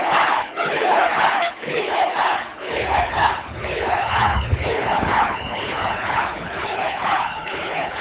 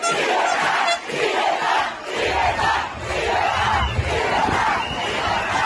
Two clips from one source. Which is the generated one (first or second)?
first